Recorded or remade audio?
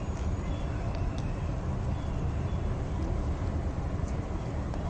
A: recorded